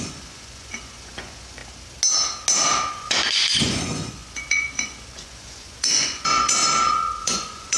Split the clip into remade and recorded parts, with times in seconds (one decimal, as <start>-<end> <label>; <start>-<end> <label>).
0.0-1.6 remade; 1.6-2.9 recorded; 2.9-6.6 remade; 6.6-7.2 recorded; 7.2-7.8 remade